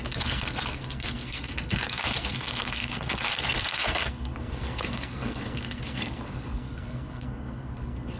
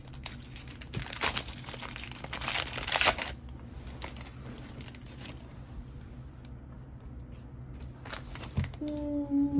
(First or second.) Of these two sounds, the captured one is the second